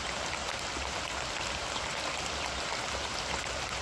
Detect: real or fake real